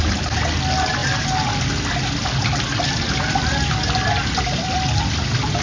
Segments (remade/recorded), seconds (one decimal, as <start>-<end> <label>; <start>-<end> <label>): 0.0-5.6 recorded